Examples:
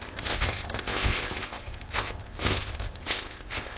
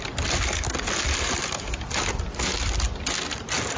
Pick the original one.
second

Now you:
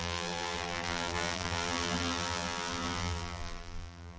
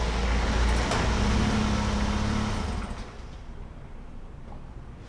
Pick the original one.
second